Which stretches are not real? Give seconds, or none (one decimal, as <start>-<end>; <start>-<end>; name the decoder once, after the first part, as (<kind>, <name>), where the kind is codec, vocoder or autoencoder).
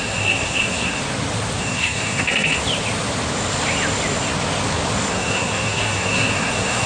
0.0-1.0 (codec, SNAC); 1.6-2.6; 5.1-6.9